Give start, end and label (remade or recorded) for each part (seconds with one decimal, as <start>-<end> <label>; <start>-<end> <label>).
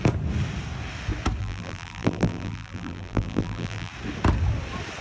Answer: 0.0-1.4 recorded; 1.4-3.9 remade; 3.9-5.0 recorded